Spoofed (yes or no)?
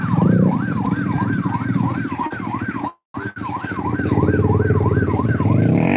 no